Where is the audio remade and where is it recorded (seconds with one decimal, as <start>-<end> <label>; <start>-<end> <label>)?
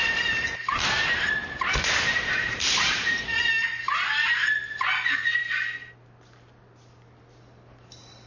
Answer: 0.0-4.9 remade; 4.9-8.3 recorded